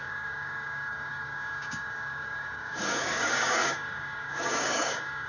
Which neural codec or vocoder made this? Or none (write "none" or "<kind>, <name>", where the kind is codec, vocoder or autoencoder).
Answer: codec, DAC